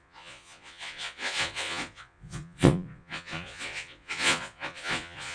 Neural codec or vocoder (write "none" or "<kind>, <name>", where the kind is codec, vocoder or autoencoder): vocoder, Vocos